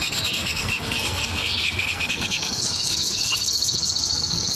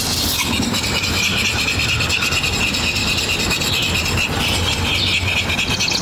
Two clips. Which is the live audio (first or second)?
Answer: second